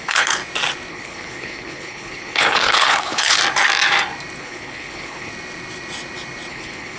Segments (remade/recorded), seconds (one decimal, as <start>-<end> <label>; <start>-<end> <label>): 0.0-0.4 remade; 0.4-0.9 recorded; 0.9-3.4 remade; 3.4-4.4 recorded; 4.4-5.3 remade; 5.3-6.5 recorded; 6.5-7.0 remade